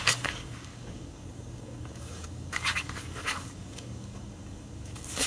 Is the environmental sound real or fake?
fake